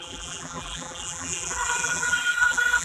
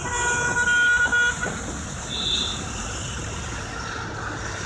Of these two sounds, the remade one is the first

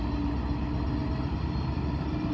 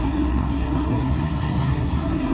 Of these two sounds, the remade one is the second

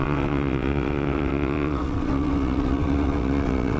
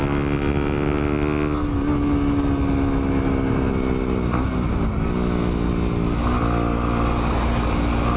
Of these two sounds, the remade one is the first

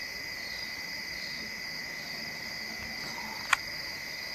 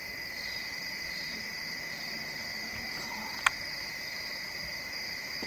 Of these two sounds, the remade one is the second